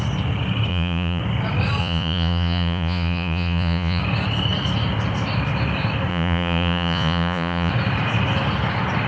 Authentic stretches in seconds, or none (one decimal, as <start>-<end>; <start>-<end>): 0.0-0.7; 1.2-1.8; 4.0-6.1; 7.7-9.1

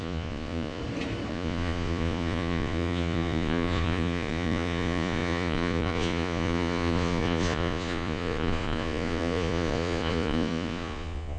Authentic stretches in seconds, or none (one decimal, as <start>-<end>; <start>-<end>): 0.8-1.3

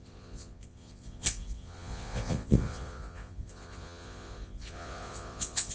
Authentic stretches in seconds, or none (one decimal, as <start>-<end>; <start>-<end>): none

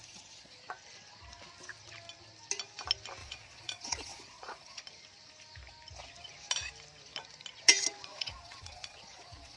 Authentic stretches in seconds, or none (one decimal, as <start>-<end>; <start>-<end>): 0.6-3.2; 4.8-8.1

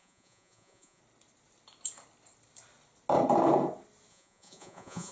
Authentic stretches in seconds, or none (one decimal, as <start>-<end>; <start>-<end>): 1.0-4.1

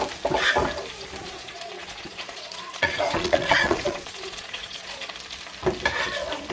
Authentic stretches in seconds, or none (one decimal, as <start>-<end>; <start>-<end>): 0.0-1.2; 5.1-6.5

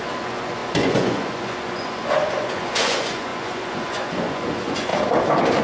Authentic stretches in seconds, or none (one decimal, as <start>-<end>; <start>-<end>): 4.9-5.6